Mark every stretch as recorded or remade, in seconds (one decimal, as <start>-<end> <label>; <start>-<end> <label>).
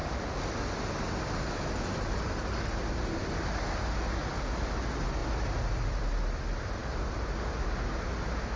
0.0-8.6 recorded